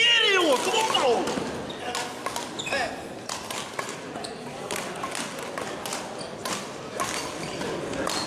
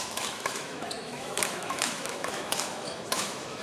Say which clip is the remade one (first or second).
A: second